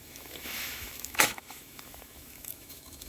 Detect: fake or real fake